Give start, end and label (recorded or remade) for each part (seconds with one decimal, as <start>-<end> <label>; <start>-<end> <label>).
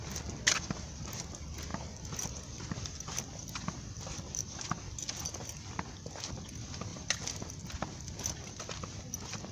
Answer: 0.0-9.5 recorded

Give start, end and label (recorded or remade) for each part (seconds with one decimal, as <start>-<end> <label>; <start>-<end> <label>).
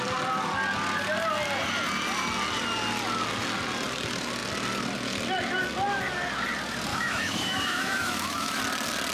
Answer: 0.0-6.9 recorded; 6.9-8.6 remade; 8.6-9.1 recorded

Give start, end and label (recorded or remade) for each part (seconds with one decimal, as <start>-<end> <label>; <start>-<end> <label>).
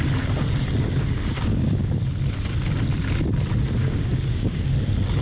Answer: 0.0-1.1 recorded; 1.1-2.0 remade; 2.0-3.8 recorded; 3.8-4.6 remade; 4.6-5.2 recorded